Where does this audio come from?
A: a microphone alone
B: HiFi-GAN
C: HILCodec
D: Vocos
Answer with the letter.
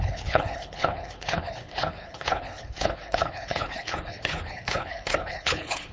C